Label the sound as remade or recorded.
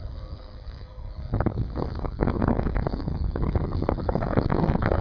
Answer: remade